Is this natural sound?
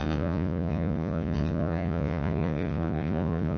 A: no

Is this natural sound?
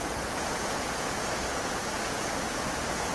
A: no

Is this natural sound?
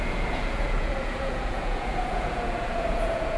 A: no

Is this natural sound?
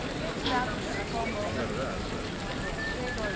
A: yes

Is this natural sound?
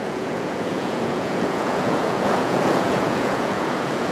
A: no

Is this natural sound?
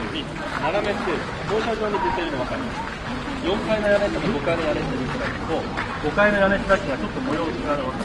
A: yes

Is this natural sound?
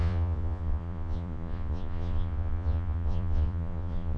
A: no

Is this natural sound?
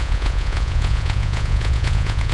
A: no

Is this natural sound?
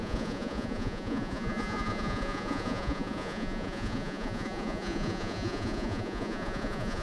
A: no